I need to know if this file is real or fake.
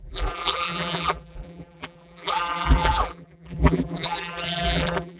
fake